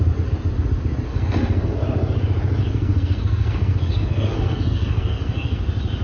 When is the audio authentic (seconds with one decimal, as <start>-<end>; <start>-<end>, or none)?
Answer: 0.0-1.1; 1.7-2.6; 5.6-6.0